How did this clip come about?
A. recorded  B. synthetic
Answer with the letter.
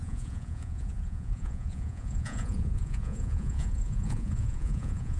B